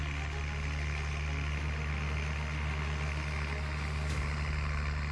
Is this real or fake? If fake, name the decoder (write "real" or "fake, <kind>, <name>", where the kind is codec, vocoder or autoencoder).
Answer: real